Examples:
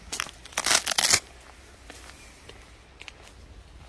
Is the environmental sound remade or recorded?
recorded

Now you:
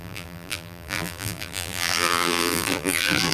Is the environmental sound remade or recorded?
remade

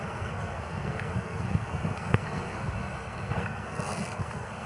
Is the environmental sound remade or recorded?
remade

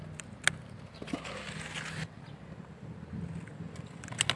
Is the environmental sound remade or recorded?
recorded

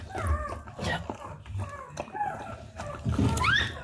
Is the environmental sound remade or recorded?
recorded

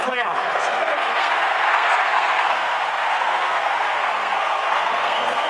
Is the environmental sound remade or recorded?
remade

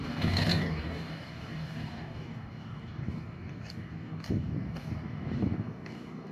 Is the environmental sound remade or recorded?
remade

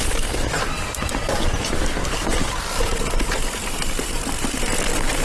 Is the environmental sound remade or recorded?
recorded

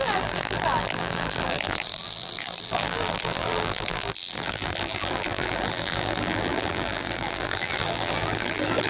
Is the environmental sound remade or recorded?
remade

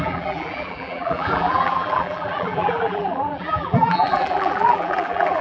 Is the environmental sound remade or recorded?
remade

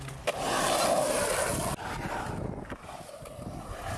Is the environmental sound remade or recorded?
recorded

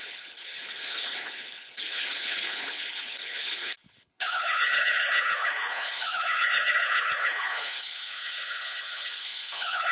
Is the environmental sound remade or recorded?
remade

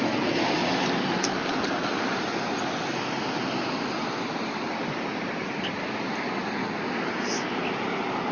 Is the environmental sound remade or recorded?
recorded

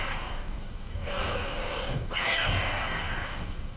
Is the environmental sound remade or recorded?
remade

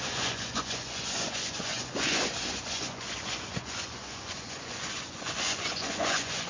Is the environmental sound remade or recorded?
remade